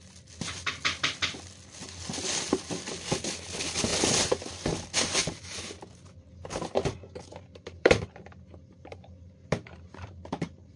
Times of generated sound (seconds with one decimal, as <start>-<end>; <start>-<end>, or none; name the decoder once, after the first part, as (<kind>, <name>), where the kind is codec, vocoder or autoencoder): none